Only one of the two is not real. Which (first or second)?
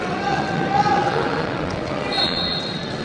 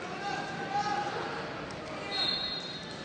first